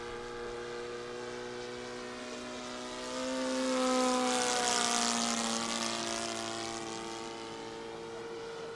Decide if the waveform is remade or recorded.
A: recorded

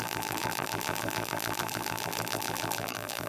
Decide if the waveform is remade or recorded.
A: remade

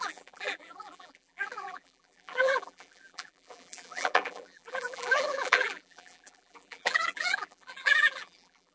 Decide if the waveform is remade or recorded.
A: remade